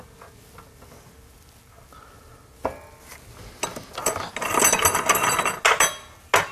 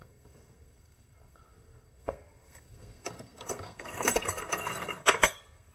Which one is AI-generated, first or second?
second